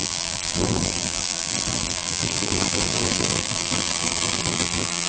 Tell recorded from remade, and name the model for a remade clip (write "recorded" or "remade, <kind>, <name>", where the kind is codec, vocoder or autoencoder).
remade, vocoder, BigVGAN v2